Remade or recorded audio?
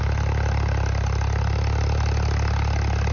recorded